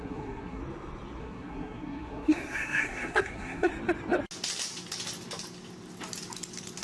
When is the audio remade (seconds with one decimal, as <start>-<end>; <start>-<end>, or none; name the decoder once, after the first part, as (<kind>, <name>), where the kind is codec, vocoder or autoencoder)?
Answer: 0.0-0.6 (codec, SNAC); 1.2-3.7